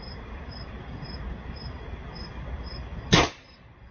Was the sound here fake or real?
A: real